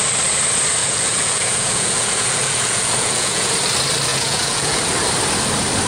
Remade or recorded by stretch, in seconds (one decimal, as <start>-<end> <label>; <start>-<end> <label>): 0.0-0.8 recorded; 0.8-3.5 remade; 3.5-4.1 recorded; 4.1-4.8 remade; 4.8-5.9 recorded